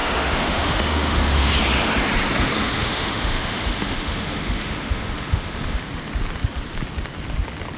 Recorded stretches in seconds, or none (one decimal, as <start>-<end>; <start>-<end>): 1.5-2.6; 5.8-7.8